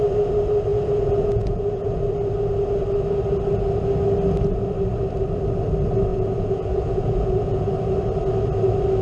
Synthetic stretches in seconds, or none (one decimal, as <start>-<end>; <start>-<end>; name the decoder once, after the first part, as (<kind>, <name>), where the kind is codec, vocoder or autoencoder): 0.7-2.0 (vocoder, Vocos); 6.1-7.7